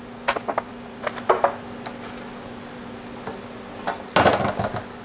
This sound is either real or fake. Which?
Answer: real